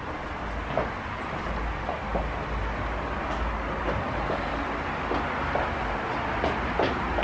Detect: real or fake real